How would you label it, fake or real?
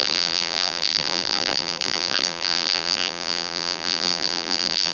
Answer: fake